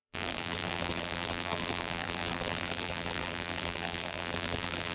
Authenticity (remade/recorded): remade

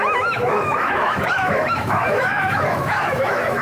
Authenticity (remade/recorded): remade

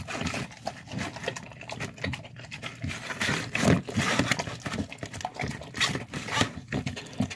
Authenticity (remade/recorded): recorded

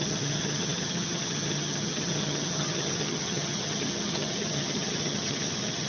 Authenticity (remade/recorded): remade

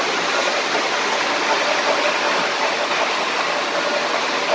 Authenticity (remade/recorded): recorded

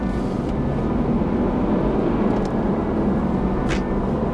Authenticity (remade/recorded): recorded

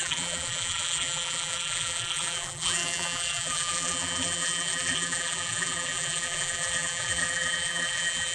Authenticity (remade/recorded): remade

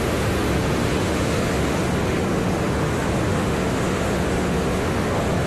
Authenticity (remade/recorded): remade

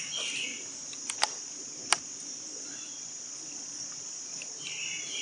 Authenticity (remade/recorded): recorded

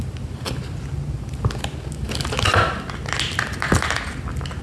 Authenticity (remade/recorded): recorded